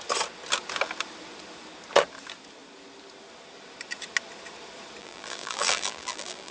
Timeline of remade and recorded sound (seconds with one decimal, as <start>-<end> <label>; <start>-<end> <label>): 0.0-5.0 recorded; 5.0-6.5 remade